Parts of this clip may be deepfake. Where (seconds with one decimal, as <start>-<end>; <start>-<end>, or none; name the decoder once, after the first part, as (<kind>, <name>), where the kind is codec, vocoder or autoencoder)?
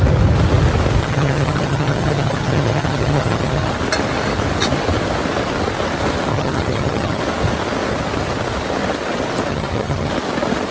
1.0-3.7 (vocoder, HiFi-GAN); 6.3-7.2; 9.5-10.1